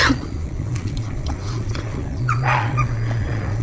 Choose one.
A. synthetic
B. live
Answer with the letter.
A